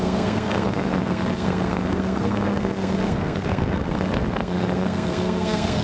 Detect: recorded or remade remade